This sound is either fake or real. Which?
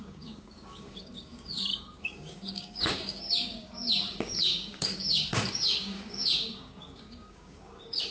fake